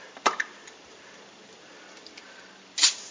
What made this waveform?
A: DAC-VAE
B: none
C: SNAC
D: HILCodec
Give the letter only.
B